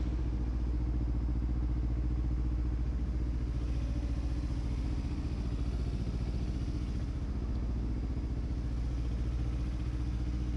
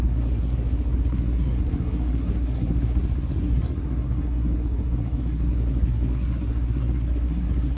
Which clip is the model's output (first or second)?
second